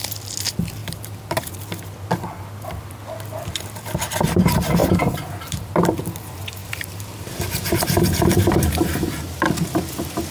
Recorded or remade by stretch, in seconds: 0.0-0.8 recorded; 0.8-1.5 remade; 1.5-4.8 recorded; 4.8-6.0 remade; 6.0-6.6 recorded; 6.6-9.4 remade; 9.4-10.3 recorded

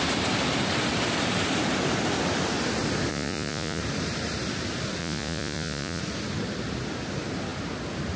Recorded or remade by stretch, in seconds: 0.0-3.1 recorded; 3.1-3.8 remade; 3.8-5.0 recorded; 5.0-6.0 remade; 6.0-8.2 recorded